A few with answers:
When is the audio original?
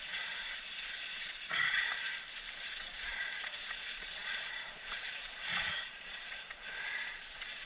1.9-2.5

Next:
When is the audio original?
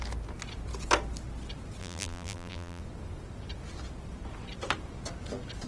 0.0-1.8; 2.8-5.7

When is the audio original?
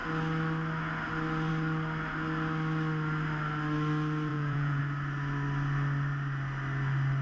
0.0-4.3; 4.8-7.2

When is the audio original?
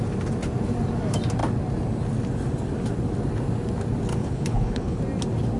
0.0-4.1; 5.0-5.6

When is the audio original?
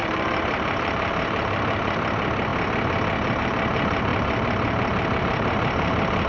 2.5-3.4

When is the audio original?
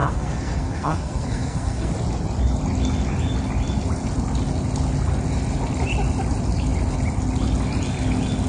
1.9-8.5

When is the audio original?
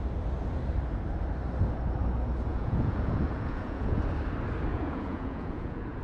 0.0-2.5; 4.0-4.7